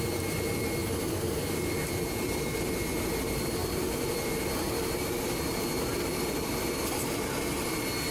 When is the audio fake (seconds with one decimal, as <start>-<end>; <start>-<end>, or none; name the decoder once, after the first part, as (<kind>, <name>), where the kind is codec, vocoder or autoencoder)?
none